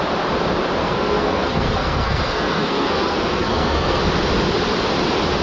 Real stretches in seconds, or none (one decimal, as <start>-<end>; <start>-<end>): 0.0-0.8; 4.0-5.4

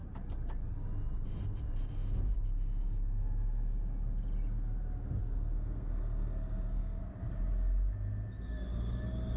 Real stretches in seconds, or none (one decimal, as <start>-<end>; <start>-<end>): 0.0-5.2; 7.0-9.4

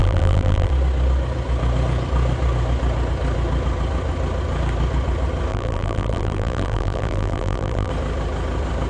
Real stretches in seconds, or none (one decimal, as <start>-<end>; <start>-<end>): 0.7-5.5; 7.9-8.9

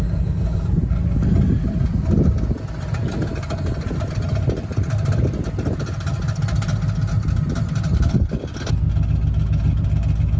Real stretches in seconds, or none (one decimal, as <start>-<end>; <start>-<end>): 0.0-10.4

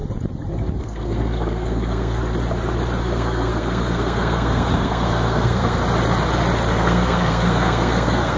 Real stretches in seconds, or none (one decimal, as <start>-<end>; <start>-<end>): 0.0-0.8; 2.2-3.0; 5.8-6.7

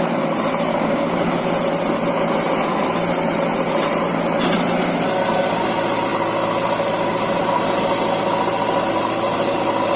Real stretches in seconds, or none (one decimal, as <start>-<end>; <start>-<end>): 0.0-0.7; 1.4-10.0

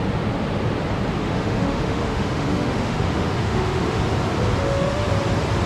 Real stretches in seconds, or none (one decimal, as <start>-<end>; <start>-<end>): 0.0-1.2; 4.0-4.6; 5.1-5.7

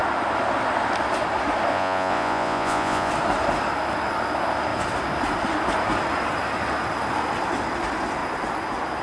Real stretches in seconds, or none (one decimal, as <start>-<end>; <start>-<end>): 0.0-1.7; 3.1-9.0